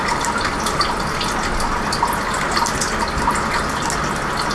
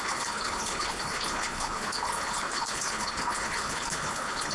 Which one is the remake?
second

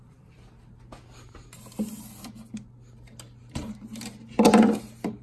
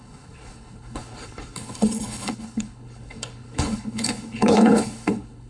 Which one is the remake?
second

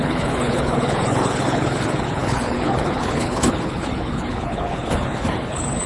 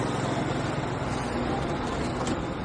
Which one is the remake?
first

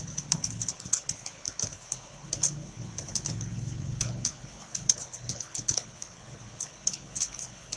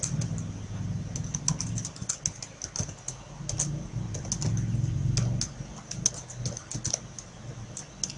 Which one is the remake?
first